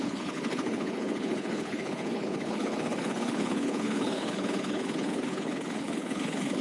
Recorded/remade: remade